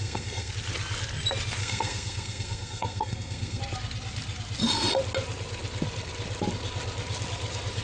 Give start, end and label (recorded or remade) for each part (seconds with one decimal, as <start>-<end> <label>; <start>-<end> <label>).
0.0-0.5 remade; 0.5-1.6 recorded; 1.6-3.6 remade; 3.6-7.8 recorded